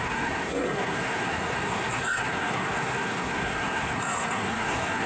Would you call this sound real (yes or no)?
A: no